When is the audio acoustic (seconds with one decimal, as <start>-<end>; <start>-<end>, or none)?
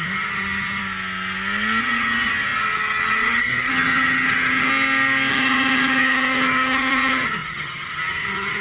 0.8-1.8; 4.7-5.3